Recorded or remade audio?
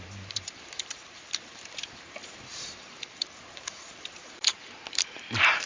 remade